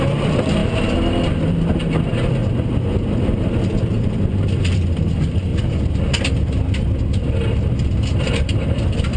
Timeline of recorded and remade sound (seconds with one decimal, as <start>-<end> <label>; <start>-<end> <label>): 0.0-0.6 remade; 0.6-1.5 recorded; 1.5-2.4 remade; 2.4-3.2 recorded; 3.2-5.5 remade; 5.5-8.2 recorded; 8.2-9.2 remade